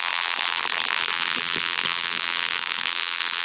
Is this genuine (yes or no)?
no